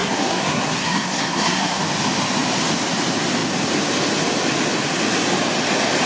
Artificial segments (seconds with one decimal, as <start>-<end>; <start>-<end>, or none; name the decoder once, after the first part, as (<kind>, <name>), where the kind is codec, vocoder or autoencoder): 0.0-1.8 (codec, SNAC)